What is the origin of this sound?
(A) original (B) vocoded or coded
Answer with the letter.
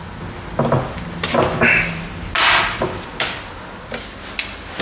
A